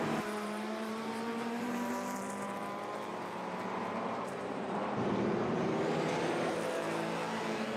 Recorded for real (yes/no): no